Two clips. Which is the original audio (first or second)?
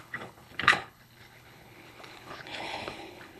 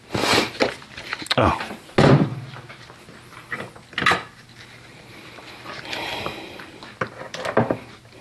second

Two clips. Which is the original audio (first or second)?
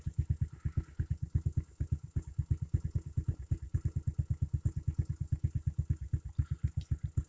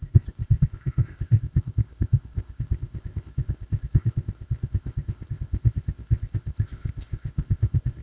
first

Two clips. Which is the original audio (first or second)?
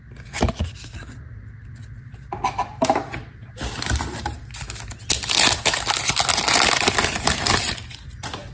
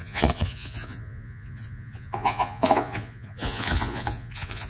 first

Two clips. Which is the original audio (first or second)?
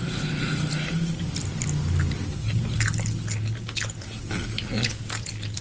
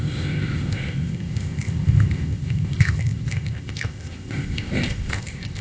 first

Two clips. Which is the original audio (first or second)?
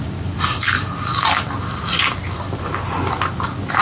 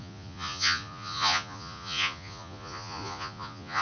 first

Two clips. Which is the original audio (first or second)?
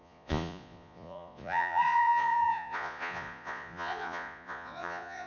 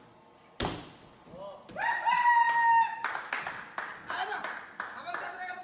second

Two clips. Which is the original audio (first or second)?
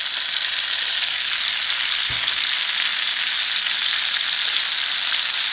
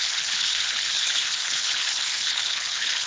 first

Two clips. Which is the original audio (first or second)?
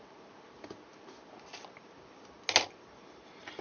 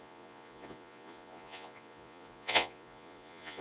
first